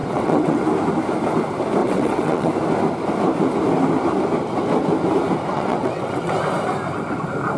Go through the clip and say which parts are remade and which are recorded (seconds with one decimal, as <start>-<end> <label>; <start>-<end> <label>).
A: 0.0-0.6 remade; 0.6-1.8 recorded; 1.8-2.5 remade; 2.5-5.5 recorded; 5.5-6.3 remade; 6.3-7.6 recorded